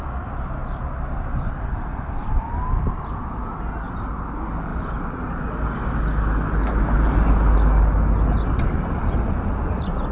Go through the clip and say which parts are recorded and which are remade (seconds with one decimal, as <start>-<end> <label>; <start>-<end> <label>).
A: 0.0-10.1 recorded